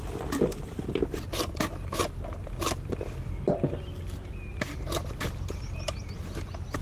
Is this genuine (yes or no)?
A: no